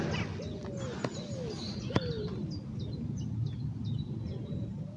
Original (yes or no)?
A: yes